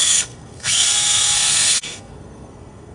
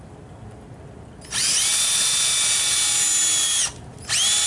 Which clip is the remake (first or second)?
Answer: first